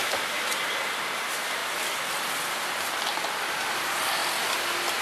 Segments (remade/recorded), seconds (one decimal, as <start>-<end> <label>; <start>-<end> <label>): 0.0-1.6 remade; 1.6-3.3 recorded; 3.3-4.2 remade; 4.2-5.0 recorded